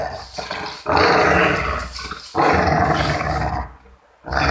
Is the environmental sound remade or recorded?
recorded